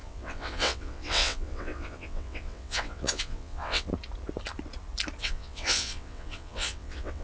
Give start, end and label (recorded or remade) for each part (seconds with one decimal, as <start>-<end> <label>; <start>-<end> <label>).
0.0-3.9 remade; 3.9-5.2 recorded; 5.2-7.2 remade